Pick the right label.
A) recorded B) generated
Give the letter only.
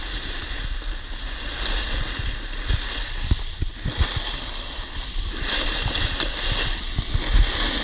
A